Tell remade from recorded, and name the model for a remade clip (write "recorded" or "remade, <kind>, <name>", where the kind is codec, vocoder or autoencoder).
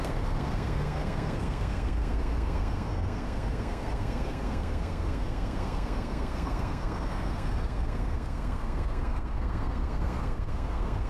remade, codec, SNAC